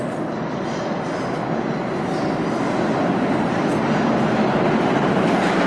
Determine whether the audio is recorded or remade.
recorded